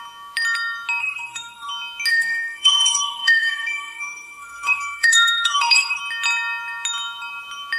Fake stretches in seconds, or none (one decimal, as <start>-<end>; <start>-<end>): 1.0-1.7; 2.1-6.0